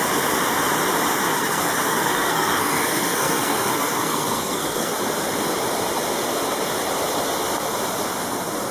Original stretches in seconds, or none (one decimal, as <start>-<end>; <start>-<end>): 0.0-1.3; 4.9-8.7

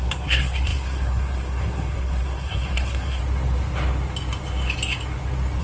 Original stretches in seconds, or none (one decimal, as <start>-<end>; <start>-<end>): 3.2-5.6

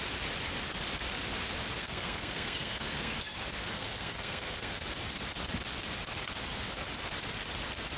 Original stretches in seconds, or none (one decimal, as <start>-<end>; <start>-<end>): 0.0-1.8; 3.2-3.8; 4.8-8.0